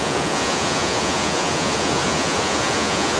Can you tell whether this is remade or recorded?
remade